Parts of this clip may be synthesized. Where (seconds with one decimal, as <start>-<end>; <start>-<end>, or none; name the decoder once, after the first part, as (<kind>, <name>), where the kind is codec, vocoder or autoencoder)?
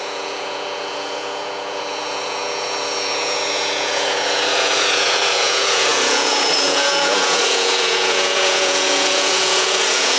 0.0-10.2 (vocoder, Vocos)